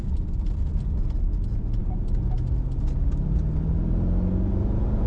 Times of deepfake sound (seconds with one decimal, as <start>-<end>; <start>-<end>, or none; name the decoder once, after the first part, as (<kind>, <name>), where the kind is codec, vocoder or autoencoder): none